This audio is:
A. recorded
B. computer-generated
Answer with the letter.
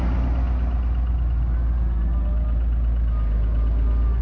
A